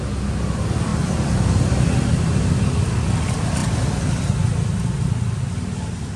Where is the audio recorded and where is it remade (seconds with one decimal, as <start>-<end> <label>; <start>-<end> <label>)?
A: 0.0-0.9 recorded; 0.9-2.2 remade; 2.2-6.2 recorded

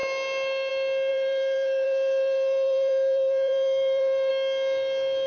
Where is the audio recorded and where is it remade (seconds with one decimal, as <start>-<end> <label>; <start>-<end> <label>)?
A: 0.0-1.1 recorded; 1.1-4.3 remade; 4.3-5.3 recorded

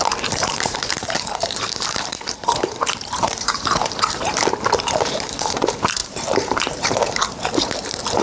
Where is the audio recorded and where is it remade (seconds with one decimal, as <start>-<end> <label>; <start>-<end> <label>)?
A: 0.0-8.2 remade

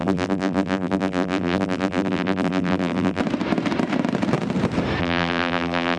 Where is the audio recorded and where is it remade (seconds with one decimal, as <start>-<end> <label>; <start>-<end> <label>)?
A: 0.0-3.2 remade; 3.2-5.0 recorded; 5.0-6.0 remade

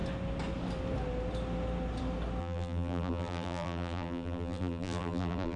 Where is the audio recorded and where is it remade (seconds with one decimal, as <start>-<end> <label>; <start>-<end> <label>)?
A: 0.0-2.4 recorded; 2.4-5.6 remade

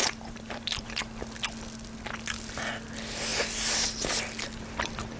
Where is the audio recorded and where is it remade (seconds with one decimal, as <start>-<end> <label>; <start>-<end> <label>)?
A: 0.0-0.9 remade; 0.9-5.2 recorded

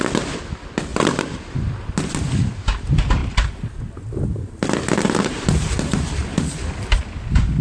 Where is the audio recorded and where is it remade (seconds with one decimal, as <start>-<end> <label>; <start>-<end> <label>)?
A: 0.0-0.9 recorded; 0.9-2.6 remade; 2.6-3.2 recorded; 3.2-3.8 remade; 3.8-6.2 recorded; 6.2-7.6 remade